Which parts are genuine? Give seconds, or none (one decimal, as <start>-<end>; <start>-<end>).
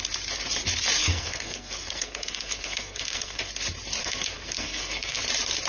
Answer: 0.0-1.0; 3.5-4.0; 5.2-5.7